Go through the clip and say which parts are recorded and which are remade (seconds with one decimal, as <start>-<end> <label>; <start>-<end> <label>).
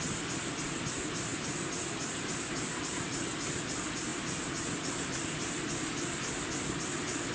0.0-7.3 recorded